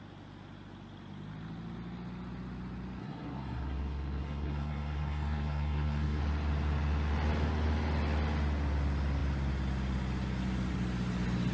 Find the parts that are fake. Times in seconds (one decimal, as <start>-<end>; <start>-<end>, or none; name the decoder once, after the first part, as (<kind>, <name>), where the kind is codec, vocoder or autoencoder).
3.0-6.2 (codec, SNAC)